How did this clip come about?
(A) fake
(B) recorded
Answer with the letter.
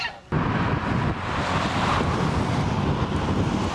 B